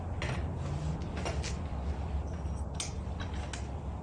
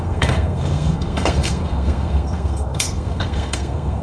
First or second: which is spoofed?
second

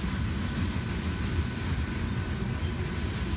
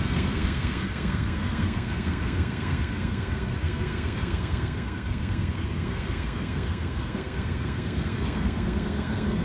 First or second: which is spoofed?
second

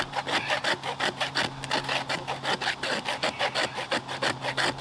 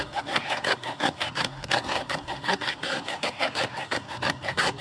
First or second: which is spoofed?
second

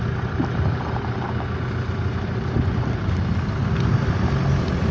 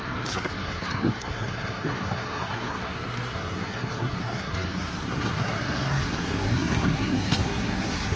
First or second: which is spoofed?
second